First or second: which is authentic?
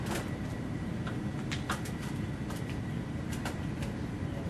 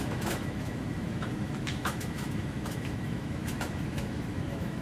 first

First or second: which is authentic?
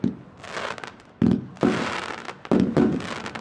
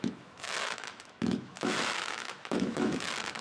first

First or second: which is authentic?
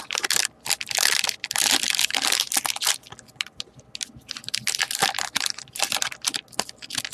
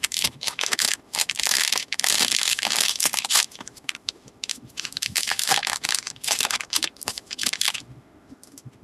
first